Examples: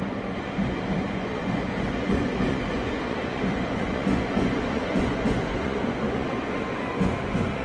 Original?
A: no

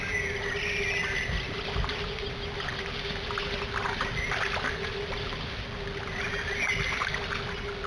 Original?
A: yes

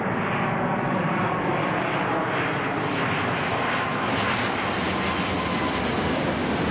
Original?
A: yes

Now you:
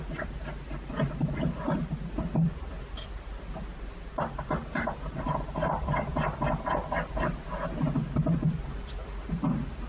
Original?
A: yes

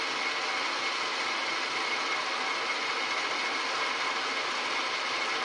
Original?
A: yes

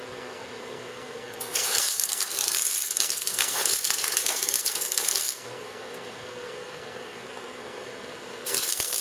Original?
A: no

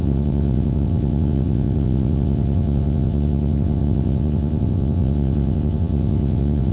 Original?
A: no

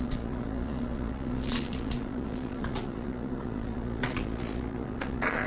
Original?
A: no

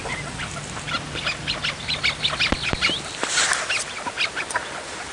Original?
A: yes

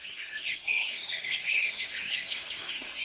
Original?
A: no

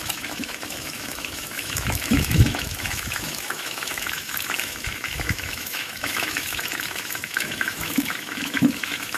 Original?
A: no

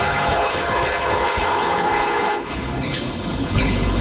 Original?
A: no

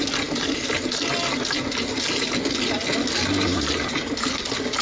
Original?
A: yes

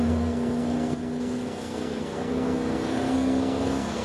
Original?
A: no